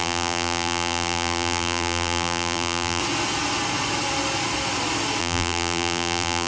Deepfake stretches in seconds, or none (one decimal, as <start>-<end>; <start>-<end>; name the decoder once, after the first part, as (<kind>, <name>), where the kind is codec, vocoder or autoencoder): 0.0-3.0 (vocoder, BigVGAN v2); 5.2-6.5